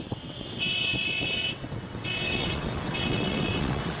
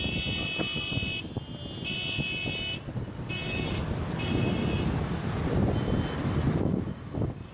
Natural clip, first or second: second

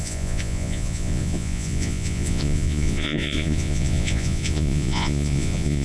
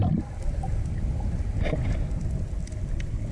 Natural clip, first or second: second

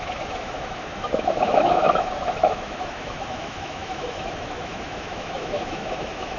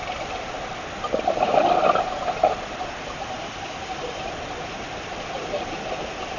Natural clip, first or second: second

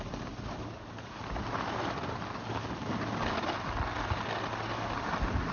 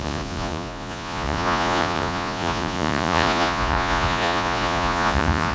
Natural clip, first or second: first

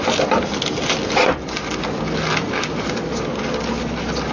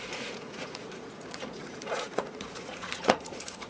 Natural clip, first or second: first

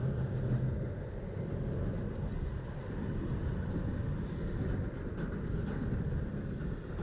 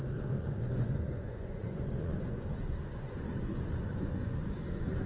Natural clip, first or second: first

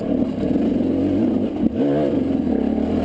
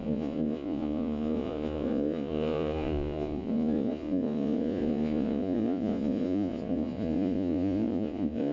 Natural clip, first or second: first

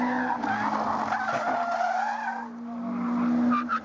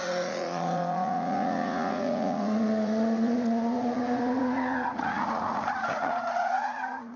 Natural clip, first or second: first